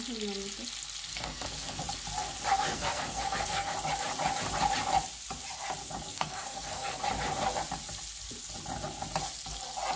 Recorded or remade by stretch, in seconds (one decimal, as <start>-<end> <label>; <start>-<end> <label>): 0.0-1.1 recorded; 1.1-1.8 remade; 1.8-2.5 recorded; 2.5-3.7 remade; 3.7-6.1 recorded; 6.1-7.0 remade; 7.0-10.0 recorded